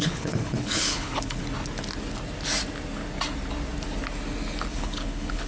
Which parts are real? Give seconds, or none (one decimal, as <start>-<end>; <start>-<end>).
1.4-4.7